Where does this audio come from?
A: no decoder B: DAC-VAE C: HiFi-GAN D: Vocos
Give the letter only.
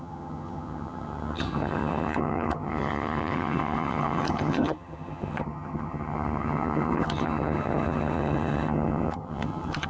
C